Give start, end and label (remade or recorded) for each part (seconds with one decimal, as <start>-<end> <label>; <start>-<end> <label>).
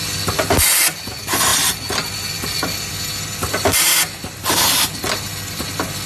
0.0-6.1 recorded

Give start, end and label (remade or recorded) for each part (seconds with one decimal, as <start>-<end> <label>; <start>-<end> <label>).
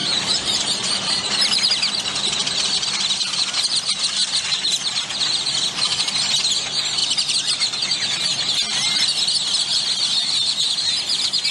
0.0-1.7 remade; 1.7-7.0 recorded; 7.0-7.6 remade; 7.6-11.5 recorded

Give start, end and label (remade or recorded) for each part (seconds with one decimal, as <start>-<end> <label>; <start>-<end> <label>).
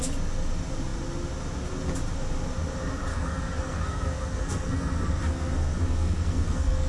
0.0-3.1 recorded; 3.1-6.9 remade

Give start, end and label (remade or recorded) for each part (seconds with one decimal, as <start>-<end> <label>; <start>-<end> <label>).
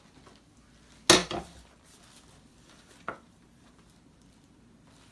0.0-1.2 recorded; 1.2-2.0 remade; 2.0-2.5 recorded; 2.5-3.7 remade; 3.7-5.1 recorded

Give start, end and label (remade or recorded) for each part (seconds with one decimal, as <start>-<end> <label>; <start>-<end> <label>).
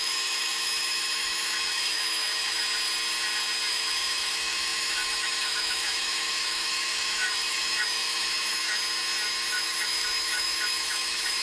0.0-2.6 remade; 2.6-3.7 recorded; 3.7-8.8 remade; 8.8-9.5 recorded; 9.5-11.4 remade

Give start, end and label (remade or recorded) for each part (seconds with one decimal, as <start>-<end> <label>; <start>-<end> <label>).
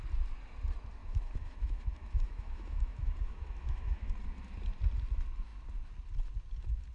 0.0-1.0 recorded; 1.0-4.1 remade; 4.1-6.9 recorded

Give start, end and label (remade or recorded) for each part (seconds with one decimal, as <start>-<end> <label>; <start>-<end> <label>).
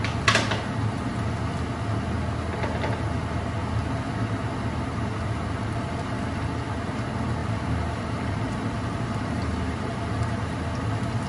0.0-7.4 recorded; 7.4-10.6 remade; 10.6-11.3 recorded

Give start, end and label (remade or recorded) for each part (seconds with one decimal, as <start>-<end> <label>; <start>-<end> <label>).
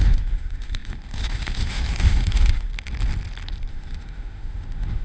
0.0-2.7 remade; 2.7-3.7 recorded; 3.7-5.0 remade